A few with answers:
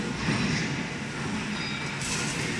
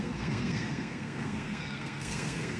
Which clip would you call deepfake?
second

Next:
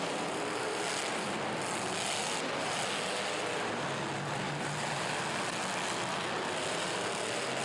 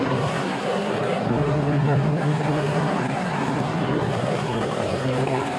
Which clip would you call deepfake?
second